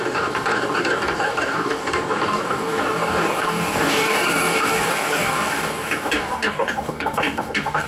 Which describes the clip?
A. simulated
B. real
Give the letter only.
A